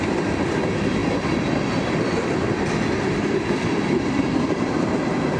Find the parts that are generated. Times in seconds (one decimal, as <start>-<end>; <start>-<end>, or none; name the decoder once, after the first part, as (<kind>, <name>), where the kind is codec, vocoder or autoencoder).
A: 0.0-5.4 (vocoder, BigVGAN v2)